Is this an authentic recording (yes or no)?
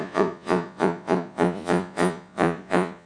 no